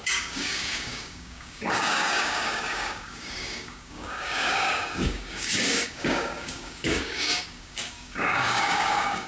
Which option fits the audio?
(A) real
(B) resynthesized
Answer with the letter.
B